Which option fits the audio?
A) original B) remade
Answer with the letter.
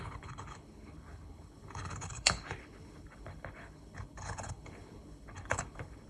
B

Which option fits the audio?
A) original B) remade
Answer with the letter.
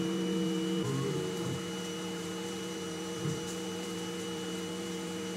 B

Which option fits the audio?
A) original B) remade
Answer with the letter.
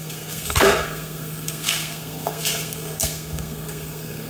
B